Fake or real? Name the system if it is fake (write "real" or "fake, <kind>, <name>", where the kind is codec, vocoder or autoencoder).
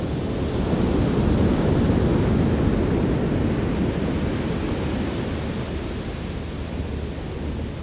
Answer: real